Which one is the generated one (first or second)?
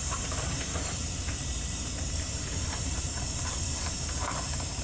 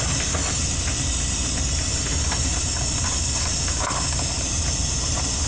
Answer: first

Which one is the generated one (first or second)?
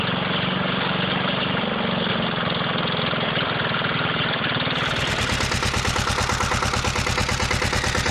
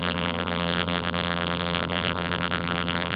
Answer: second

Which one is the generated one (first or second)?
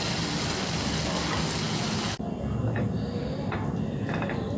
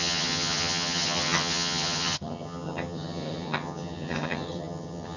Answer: second